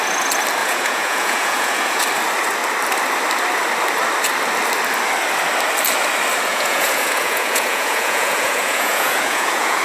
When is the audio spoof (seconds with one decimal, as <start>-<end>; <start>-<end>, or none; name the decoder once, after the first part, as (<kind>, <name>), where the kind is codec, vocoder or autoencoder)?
0.6-2.0 (vocoder, Vocos); 6.5-9.8